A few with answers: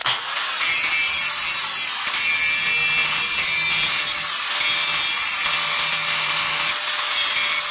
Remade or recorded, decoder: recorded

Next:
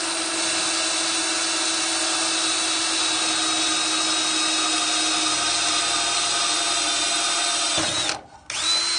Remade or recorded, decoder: recorded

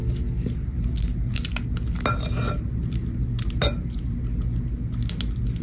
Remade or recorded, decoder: recorded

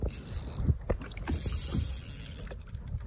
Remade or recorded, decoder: recorded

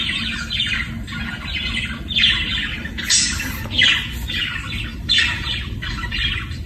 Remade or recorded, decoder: recorded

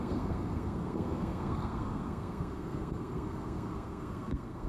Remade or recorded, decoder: remade, codec, SNAC